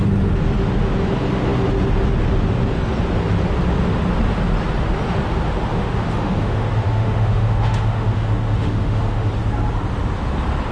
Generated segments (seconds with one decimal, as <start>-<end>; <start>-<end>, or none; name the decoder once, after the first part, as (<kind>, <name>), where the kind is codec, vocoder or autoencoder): 5.7-9.3 (autoencoder, DAC-VAE)